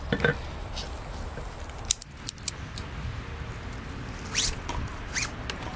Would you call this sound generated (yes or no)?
no